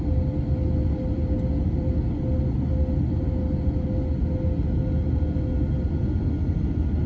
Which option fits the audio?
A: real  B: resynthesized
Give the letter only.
A